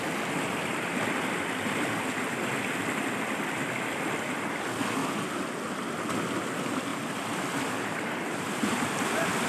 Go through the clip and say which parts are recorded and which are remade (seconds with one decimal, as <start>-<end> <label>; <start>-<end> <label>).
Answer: 0.0-6.9 recorded; 6.9-9.1 remade; 9.1-9.5 recorded